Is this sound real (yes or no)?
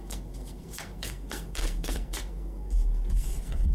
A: no